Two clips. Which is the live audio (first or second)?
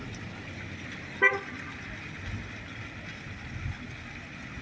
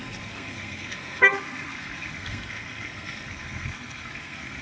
first